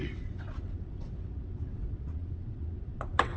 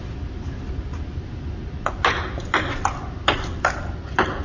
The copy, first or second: first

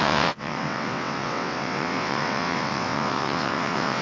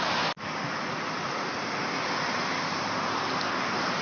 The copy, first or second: first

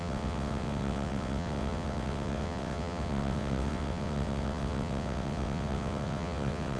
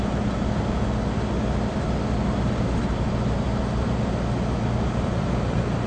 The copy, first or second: first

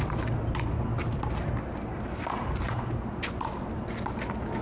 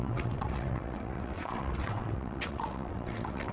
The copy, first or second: second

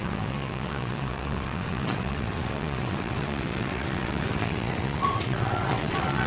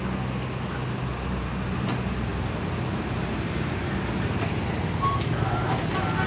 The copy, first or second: first